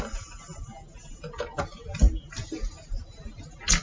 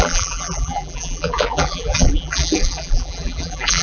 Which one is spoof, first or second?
second